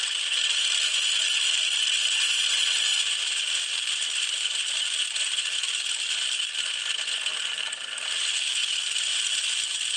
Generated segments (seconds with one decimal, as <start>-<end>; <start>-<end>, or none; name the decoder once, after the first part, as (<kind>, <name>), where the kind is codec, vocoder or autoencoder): 0.0-10.0 (vocoder, BigVGAN v2)